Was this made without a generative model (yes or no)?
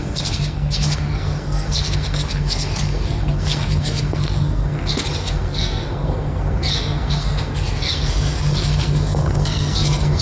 no